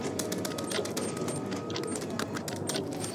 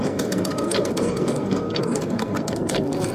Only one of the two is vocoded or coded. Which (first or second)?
second